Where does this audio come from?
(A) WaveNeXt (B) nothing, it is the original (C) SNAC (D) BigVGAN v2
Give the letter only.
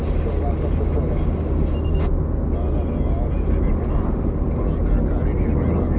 B